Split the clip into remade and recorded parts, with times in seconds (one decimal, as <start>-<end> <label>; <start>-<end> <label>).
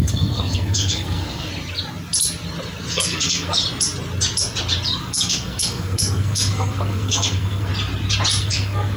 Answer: 0.0-1.5 remade; 1.5-2.9 recorded; 2.9-3.6 remade; 3.6-5.0 recorded; 5.0-7.7 remade; 7.7-8.4 recorded; 8.4-9.0 remade